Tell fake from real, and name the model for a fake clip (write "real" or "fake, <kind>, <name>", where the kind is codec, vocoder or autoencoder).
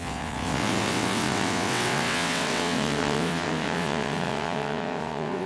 fake, vocoder, WaveNeXt